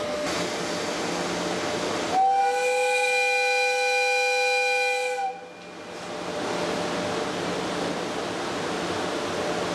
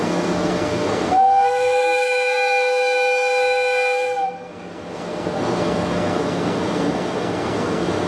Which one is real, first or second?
first